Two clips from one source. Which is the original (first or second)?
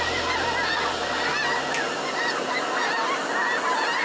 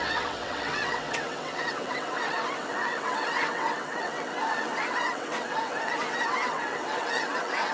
first